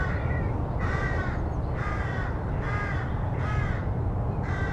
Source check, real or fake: real